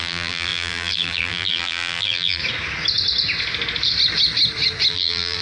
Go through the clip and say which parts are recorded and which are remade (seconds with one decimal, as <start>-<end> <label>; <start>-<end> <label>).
0.0-2.4 remade; 2.4-4.9 recorded; 4.9-5.4 remade